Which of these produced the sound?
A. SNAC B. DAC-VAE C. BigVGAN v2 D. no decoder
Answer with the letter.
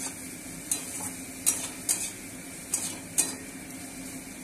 D